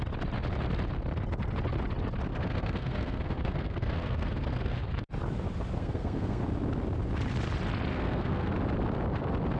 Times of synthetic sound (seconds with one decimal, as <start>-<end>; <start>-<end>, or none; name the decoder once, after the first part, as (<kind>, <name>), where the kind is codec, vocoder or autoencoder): 2.3-5.1 (codec, SNAC); 5.8-6.4; 7.9-8.5